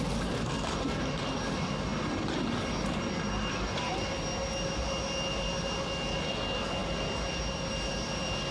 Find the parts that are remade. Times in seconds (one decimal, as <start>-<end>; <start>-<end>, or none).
none